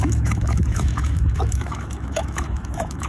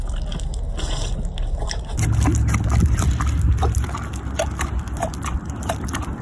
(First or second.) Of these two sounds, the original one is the second